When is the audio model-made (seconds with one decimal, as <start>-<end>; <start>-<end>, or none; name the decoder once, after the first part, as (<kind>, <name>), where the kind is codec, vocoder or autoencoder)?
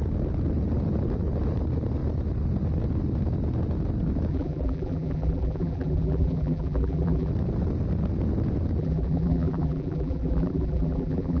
4.3-7.3 (vocoder, BigVGAN v2); 8.8-11.4